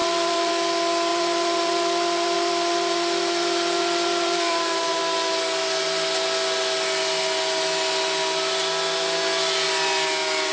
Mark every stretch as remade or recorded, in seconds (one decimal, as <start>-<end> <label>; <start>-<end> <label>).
0.0-0.5 remade; 0.5-1.1 recorded; 1.1-5.0 remade; 5.0-10.5 recorded